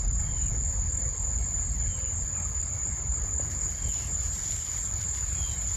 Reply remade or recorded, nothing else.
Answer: recorded